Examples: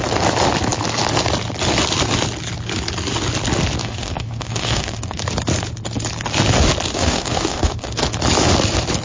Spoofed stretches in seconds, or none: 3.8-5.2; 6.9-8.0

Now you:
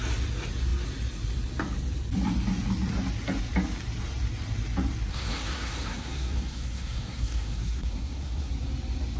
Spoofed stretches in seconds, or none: 5.1-8.5